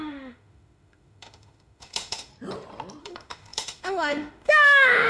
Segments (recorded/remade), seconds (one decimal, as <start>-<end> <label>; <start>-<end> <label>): 0.0-2.3 remade; 2.3-3.0 recorded; 3.0-5.1 remade